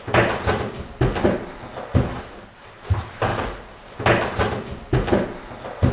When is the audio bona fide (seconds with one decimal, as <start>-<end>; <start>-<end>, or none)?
0.0-5.9